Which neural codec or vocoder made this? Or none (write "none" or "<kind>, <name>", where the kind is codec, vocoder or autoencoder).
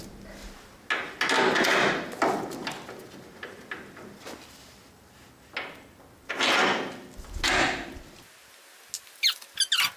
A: none